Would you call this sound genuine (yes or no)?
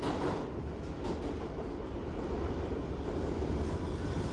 yes